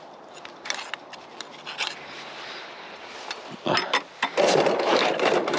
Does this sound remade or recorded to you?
recorded